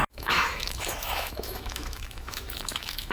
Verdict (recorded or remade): remade